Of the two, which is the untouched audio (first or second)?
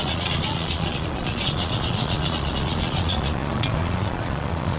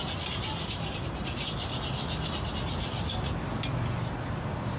second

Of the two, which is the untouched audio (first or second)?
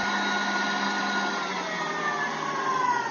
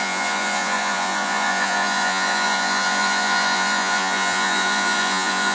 first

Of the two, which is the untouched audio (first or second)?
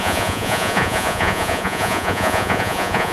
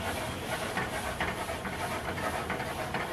second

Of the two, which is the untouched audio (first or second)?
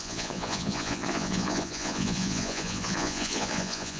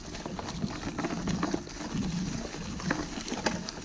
second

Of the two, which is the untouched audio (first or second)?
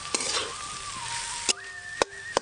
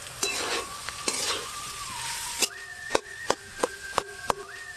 first